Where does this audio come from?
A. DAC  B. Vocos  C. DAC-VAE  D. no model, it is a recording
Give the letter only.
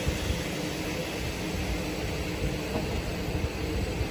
D